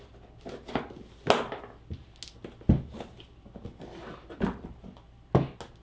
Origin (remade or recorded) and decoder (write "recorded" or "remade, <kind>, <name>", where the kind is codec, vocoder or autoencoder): recorded